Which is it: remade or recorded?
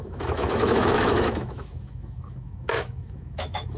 remade